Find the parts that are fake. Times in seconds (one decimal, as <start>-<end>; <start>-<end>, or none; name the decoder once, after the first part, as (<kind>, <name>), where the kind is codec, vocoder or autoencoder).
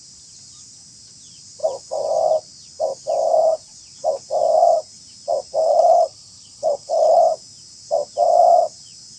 5.6-7.2 (codec, HILCodec)